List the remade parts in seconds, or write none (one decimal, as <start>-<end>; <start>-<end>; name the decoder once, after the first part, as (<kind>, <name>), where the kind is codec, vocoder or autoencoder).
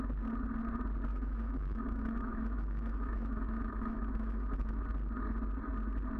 1.1-4.8 (autoencoder, DAC-VAE)